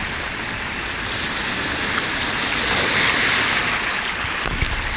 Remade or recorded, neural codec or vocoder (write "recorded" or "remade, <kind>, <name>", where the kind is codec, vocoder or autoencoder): recorded